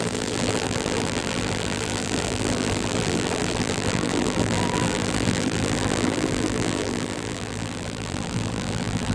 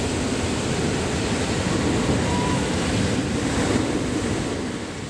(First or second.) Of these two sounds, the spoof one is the first